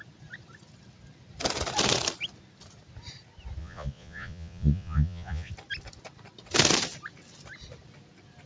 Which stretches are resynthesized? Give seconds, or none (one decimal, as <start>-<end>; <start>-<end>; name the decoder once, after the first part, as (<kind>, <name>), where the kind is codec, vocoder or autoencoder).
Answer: 3.6-5.5 (vocoder, Vocos)